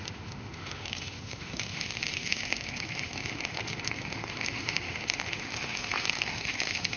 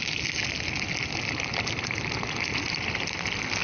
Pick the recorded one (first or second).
second